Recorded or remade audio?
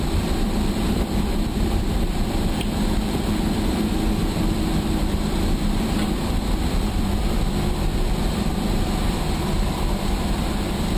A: remade